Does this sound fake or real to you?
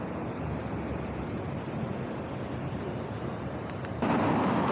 real